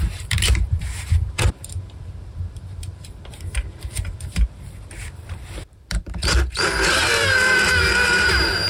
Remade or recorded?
remade